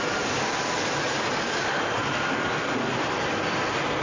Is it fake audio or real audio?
real